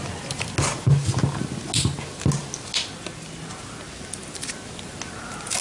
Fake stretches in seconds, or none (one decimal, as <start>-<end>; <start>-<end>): none